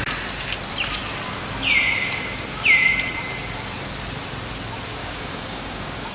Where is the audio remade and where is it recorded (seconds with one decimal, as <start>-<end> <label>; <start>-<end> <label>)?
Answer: 0.0-5.0 recorded; 5.0-6.1 remade